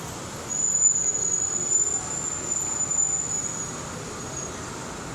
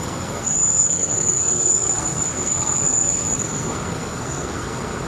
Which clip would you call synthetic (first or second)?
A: second